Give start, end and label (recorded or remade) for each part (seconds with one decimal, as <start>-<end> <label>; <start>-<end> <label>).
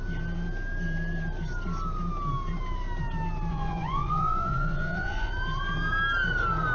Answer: 0.0-3.5 recorded; 3.5-5.3 remade; 5.3-6.7 recorded